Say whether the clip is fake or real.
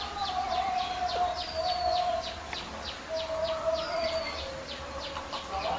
real